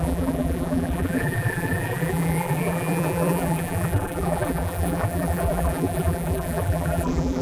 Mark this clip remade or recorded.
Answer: remade